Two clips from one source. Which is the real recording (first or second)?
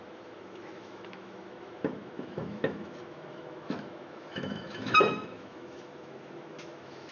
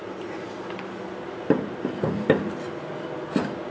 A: second